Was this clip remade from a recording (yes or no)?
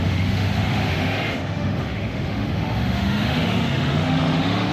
yes